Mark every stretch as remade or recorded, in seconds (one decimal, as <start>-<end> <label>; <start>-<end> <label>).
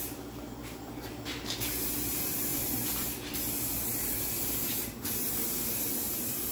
0.0-6.5 remade